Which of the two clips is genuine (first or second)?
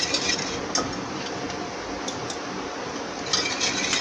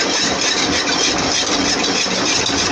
first